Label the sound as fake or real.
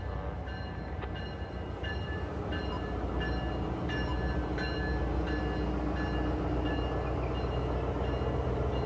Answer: real